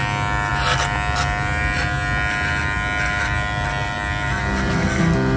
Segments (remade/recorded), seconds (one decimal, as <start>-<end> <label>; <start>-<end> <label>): 0.0-5.4 recorded